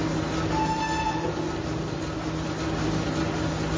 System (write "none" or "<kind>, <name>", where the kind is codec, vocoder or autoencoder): none